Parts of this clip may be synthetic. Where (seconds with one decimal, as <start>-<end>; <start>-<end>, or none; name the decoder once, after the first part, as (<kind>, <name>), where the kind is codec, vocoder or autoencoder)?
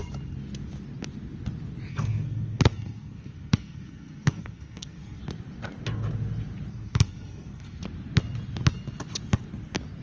1.9-5.2 (codec, SNAC); 6.7-7.8